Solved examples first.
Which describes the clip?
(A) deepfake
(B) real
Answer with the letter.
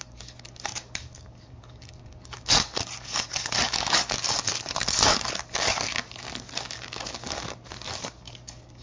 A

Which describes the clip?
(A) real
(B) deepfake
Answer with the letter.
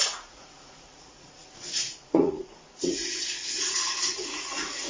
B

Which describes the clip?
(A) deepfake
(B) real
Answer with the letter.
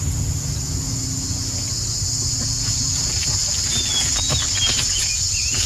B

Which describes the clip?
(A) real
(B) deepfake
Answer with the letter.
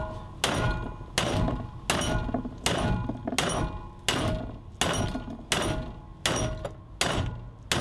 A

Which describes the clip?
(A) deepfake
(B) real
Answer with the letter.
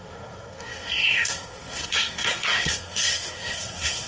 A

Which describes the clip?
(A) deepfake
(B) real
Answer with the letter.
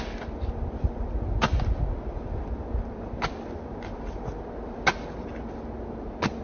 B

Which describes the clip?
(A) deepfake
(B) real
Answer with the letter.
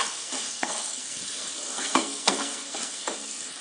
A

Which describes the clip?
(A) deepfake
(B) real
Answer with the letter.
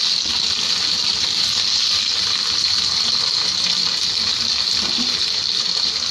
B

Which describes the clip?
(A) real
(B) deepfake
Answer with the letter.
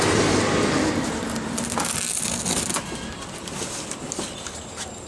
A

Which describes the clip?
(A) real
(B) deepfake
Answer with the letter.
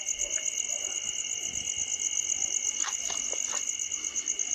A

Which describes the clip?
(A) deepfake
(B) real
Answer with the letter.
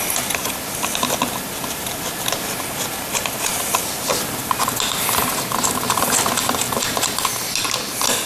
B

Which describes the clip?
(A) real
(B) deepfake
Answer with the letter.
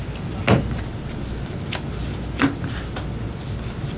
A